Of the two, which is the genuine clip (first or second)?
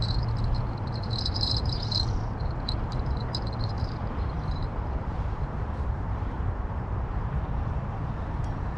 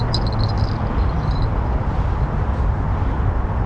second